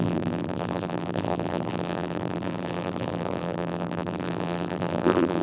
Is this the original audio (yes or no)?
no